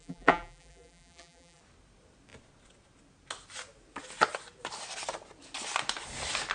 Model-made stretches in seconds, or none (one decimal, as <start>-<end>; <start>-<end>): 0.0-1.6

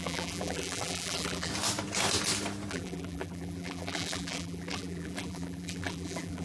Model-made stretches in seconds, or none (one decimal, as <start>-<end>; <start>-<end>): 0.0-1.5; 2.7-6.4

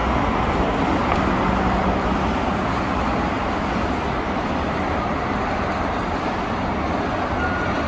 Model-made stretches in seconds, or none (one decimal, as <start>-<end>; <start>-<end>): none

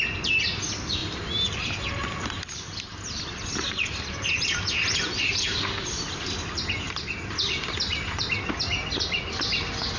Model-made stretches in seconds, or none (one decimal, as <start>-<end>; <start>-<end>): none

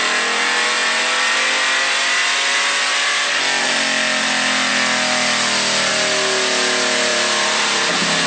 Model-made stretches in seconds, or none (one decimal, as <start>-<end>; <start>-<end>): 7.1-7.9

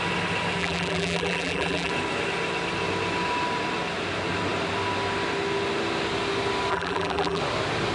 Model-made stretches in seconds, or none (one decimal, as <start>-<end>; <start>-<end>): 0.6-1.9; 6.7-7.4

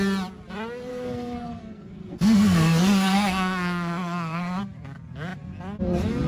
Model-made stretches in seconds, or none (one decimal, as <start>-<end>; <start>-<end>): 0.9-4.6

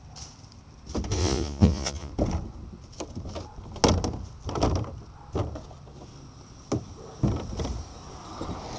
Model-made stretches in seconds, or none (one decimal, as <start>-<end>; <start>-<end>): 1.2-2.1